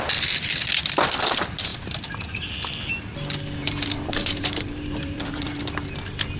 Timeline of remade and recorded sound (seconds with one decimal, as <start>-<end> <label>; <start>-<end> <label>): 0.0-3.6 recorded; 3.6-5.5 remade; 5.5-6.4 recorded

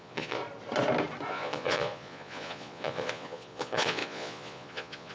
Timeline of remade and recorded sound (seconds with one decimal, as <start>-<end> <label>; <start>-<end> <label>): 0.0-0.4 remade; 0.4-1.3 recorded; 1.3-5.1 remade